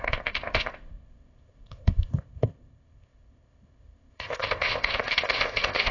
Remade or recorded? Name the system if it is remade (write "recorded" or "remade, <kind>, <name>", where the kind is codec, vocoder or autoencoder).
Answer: remade, codec, ZipCodec